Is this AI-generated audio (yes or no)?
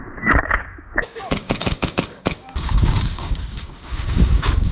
yes